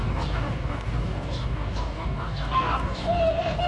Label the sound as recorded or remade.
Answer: remade